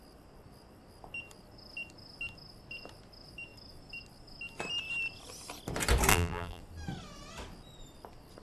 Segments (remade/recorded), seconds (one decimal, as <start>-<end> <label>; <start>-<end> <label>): 0.0-6.1 recorded; 6.1-6.6 remade; 6.6-8.4 recorded

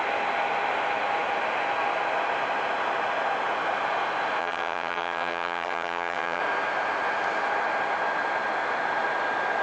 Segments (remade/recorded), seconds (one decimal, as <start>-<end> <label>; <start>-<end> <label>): 0.0-4.4 recorded; 4.4-6.4 remade; 6.4-9.6 recorded

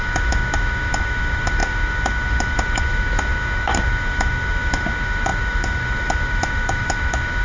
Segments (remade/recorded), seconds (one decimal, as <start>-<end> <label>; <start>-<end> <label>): 0.0-7.4 remade

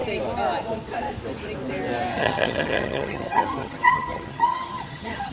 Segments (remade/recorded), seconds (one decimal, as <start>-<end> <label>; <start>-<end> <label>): 0.0-2.1 recorded; 2.1-5.3 remade

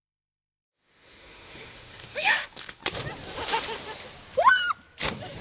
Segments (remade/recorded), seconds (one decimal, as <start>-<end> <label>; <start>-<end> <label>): 0.0-2.8 remade; 2.8-5.4 recorded

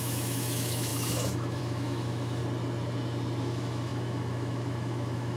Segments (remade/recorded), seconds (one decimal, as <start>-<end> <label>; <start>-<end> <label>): 0.0-2.4 remade; 2.4-3.4 recorded; 3.4-5.4 remade